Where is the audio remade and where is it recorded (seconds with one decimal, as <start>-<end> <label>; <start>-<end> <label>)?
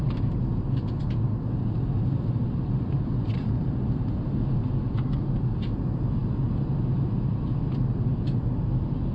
0.0-9.1 recorded